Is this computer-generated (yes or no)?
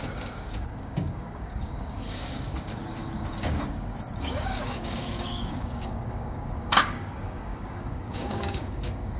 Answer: yes